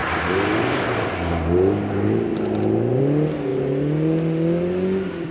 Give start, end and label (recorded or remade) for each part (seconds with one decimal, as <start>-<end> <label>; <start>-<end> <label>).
0.0-5.3 recorded

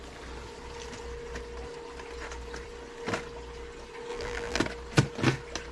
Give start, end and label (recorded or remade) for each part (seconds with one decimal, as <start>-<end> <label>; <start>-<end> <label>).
0.0-4.1 recorded; 4.1-4.6 remade; 4.6-5.7 recorded

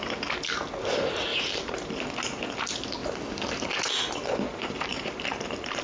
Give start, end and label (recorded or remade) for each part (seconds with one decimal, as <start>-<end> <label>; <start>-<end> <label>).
0.0-1.3 recorded; 1.3-2.0 remade; 2.0-4.5 recorded; 4.5-5.8 remade

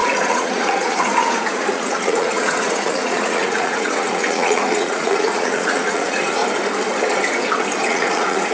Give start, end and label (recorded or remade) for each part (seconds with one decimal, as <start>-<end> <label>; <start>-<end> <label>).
0.0-6.4 remade; 6.4-7.8 recorded; 7.8-8.5 remade

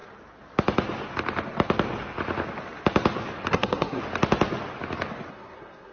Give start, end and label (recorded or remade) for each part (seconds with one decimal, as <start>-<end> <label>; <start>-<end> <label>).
0.0-3.5 recorded; 3.5-4.0 remade; 4.0-5.3 recorded; 5.3-5.9 remade

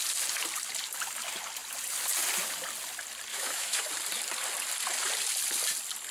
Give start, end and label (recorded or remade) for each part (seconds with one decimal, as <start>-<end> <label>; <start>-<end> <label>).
0.0-3.3 recorded; 3.3-3.9 remade; 3.9-6.1 recorded

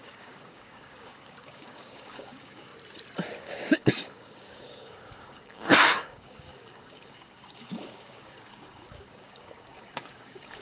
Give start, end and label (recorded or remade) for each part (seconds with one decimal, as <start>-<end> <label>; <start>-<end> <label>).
0.0-2.7 remade; 2.7-3.4 recorded; 3.4-10.6 remade

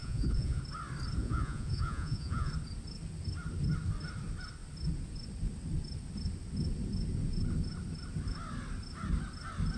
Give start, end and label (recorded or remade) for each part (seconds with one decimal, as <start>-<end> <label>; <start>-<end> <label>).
0.0-0.6 remade; 0.6-1.2 recorded; 1.2-2.5 remade; 2.5-9.8 recorded